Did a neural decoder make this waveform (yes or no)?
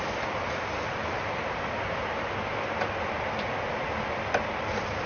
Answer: no